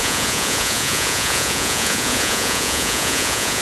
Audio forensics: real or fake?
fake